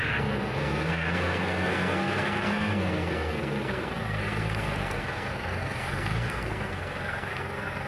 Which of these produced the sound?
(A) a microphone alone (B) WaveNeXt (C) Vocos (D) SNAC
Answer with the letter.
D